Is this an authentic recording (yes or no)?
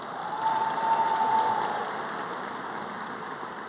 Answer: yes